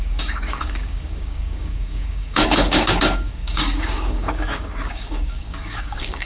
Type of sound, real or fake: fake